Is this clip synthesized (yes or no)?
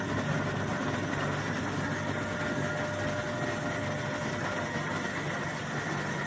no